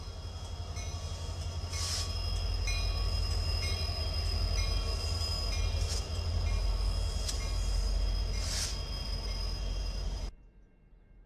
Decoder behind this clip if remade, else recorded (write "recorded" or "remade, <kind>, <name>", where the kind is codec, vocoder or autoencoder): recorded